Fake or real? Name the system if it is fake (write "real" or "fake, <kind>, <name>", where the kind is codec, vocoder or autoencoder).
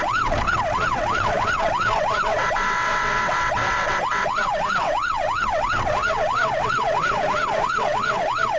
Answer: fake, vocoder, WaveNeXt